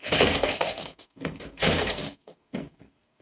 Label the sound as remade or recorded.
remade